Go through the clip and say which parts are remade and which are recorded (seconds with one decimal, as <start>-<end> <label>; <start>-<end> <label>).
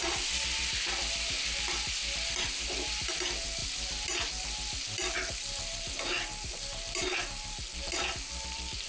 0.0-8.9 recorded